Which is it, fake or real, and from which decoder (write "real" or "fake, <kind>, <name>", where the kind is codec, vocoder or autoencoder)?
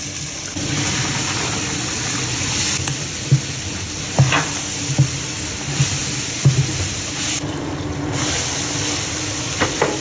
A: real